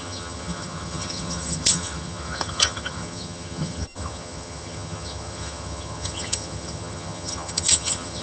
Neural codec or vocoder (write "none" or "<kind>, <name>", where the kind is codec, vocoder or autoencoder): vocoder, HiFi-GAN